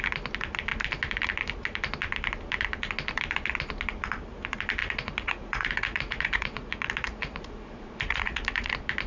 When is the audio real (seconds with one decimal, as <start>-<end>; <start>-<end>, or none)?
0.0-4.8; 8.7-9.1